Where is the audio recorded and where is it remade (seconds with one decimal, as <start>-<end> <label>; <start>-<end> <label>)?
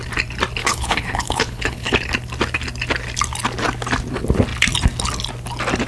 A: 0.0-0.6 recorded; 0.6-2.1 remade; 2.1-5.9 recorded